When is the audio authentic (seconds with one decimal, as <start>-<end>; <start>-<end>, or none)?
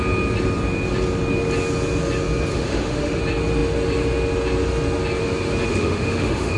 0.0-2.5; 3.2-5.7